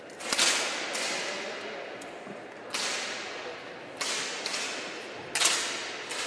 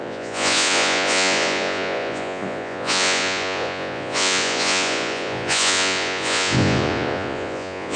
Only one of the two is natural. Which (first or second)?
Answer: first